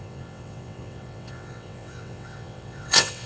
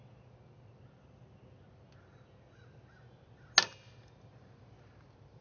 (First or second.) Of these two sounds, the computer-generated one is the first